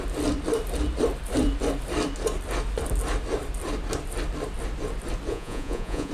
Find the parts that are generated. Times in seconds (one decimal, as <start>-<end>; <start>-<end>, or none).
5.3-6.1